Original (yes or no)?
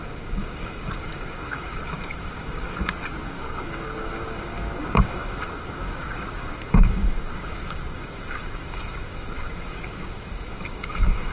no